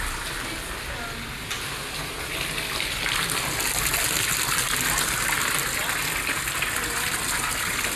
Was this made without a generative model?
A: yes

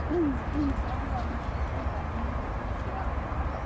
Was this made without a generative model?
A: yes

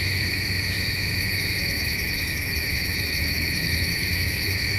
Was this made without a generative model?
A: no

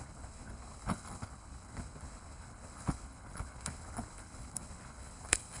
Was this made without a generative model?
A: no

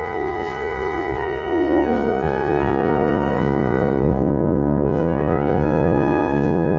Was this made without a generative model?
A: no